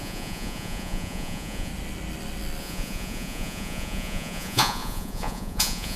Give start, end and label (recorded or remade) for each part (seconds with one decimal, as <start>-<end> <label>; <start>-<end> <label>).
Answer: 0.0-1.7 remade; 1.7-2.6 recorded; 2.6-6.0 remade

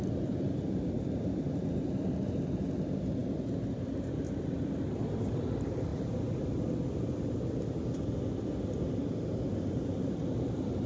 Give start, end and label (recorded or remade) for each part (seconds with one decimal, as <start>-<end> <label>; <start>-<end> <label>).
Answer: 0.0-10.9 recorded